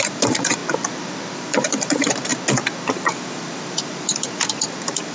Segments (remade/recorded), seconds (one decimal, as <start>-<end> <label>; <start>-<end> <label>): 0.0-0.6 remade; 0.6-1.3 recorded; 1.3-2.3 remade; 2.3-2.9 recorded; 2.9-5.1 remade